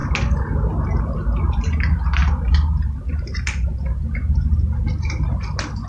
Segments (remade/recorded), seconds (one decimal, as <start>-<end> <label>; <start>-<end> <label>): 0.0-1.0 recorded; 1.0-2.2 remade; 2.2-5.9 recorded